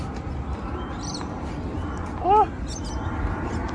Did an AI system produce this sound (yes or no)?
no